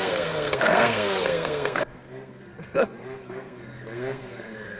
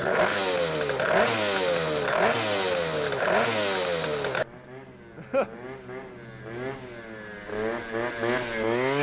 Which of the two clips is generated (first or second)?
first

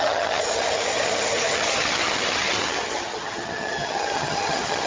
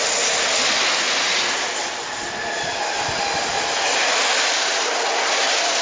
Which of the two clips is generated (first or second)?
first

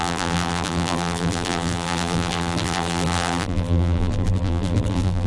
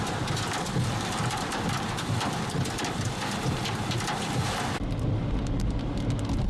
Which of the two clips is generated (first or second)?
first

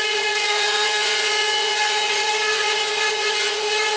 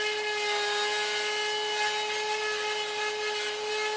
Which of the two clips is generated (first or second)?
first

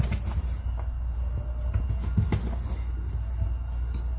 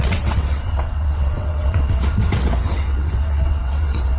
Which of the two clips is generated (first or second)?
second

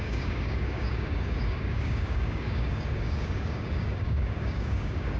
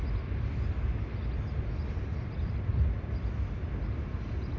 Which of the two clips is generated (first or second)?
first